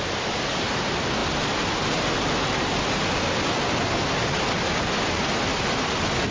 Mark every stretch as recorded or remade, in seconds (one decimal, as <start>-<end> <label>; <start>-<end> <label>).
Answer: 0.0-6.3 recorded